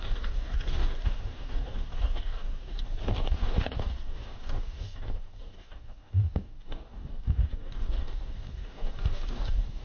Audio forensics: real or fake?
fake